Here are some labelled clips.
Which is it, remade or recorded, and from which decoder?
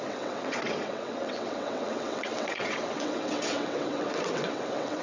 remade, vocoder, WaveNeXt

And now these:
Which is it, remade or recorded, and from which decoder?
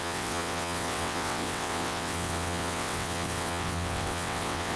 remade, vocoder, WaveNeXt